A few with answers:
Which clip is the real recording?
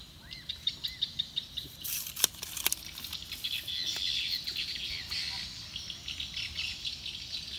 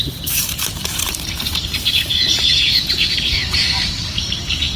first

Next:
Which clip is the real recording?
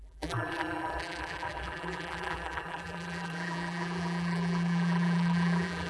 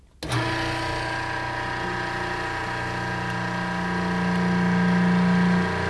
second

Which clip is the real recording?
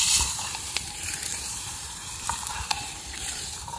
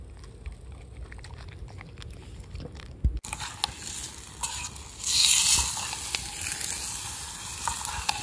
second